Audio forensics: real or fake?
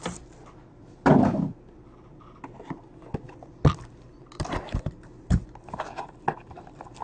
fake